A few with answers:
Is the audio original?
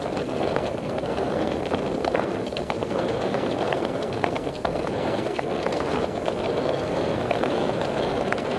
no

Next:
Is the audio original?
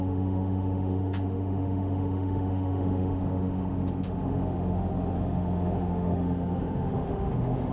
no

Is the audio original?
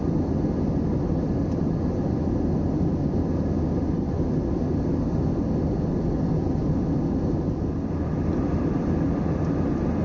yes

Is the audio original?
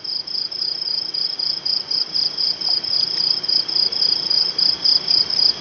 yes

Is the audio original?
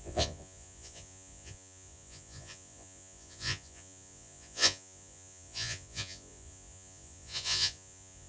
no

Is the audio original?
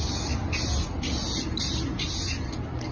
yes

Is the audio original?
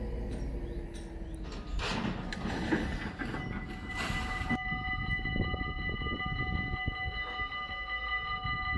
yes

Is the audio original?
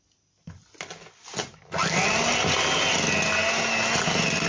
yes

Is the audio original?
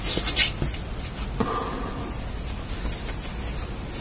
yes